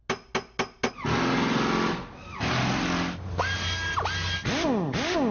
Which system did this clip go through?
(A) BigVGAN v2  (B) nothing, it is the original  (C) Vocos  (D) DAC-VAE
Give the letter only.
B